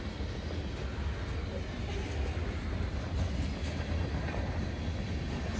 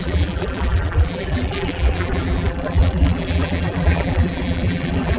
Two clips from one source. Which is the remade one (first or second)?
second